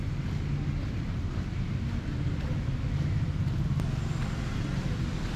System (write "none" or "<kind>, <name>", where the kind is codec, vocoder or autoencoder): none